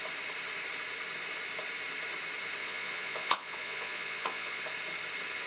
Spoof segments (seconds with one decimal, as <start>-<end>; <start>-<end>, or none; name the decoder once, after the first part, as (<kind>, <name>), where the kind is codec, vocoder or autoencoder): 2.6-4.6 (vocoder, Vocos)